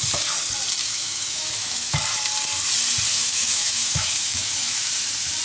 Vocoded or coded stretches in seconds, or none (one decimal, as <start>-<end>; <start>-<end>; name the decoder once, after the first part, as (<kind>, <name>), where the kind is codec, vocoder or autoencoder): 0.8-2.0 (autoencoder, DAC-VAE); 3.1-4.9